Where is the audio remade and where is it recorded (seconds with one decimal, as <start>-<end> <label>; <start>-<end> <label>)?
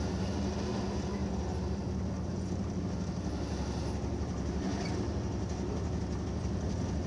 0.0-1.2 recorded; 1.2-2.8 remade; 2.8-3.8 recorded; 3.8-6.0 remade; 6.0-7.1 recorded